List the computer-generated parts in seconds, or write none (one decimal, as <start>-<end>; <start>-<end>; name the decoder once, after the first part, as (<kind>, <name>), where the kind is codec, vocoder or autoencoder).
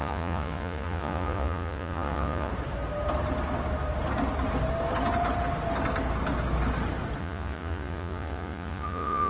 0.0-2.5 (vocoder, Vocos); 7.2-9.3